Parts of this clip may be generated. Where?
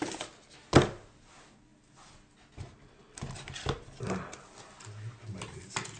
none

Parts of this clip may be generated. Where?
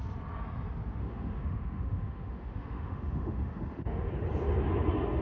1.0-4.1 (autoencoder, DAC-VAE)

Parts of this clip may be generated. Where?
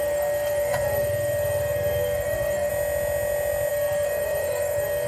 0.0-2.7 (codec, SNAC); 3.7-5.1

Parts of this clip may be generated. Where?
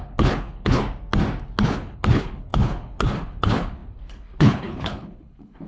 0.0-0.8 (codec, HILCodec); 1.6-5.7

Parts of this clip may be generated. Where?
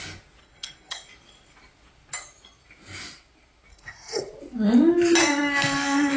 0.4-1.1 (codec, SNAC); 3.7-4.2; 5.2-6.2